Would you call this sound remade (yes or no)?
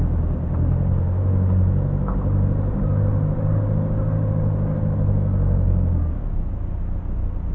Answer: no